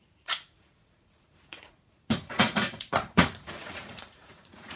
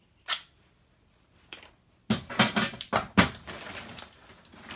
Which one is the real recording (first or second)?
second